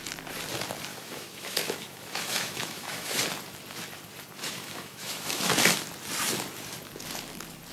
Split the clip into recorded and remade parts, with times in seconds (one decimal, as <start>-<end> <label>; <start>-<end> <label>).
0.0-0.9 recorded; 0.9-3.2 remade; 3.2-4.4 recorded; 4.4-5.5 remade; 5.5-7.7 recorded